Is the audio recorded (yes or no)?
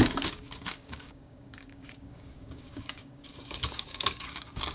no